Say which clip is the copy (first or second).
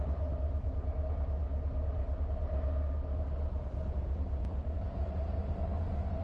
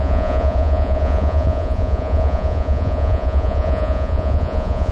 second